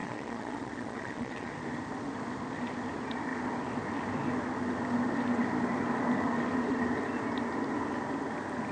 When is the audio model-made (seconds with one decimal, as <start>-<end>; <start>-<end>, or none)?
0.0-1.5

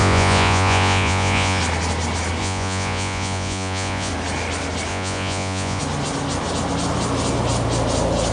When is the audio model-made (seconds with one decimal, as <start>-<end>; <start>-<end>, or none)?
0.0-1.6; 2.4-4.1; 4.9-5.8

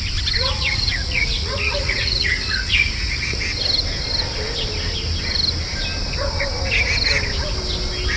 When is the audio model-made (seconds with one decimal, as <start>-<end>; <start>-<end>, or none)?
0.4-3.4

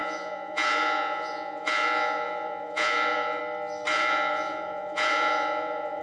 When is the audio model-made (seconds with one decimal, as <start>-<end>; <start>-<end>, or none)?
0.0-3.4; 3.9-6.0

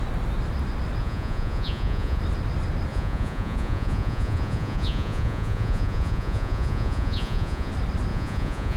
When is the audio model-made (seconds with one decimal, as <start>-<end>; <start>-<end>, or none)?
1.0-2.2; 2.9-7.7; 8.1-8.8

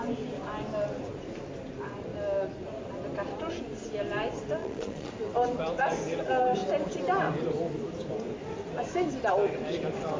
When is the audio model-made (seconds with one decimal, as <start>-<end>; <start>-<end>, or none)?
4.6-5.1

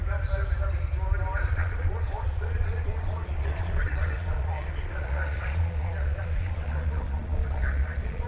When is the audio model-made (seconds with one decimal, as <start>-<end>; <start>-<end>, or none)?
1.5-8.3

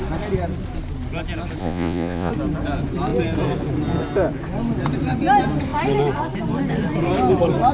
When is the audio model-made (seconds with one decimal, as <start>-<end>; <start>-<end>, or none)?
1.6-2.3